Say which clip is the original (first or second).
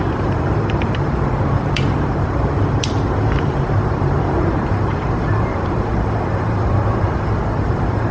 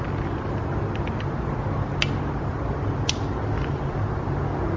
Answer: second